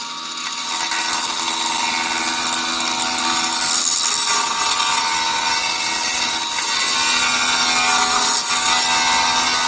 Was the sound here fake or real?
real